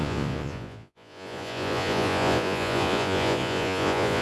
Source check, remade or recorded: remade